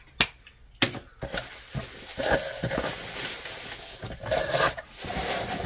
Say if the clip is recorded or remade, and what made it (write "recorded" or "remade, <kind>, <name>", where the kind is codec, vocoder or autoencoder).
recorded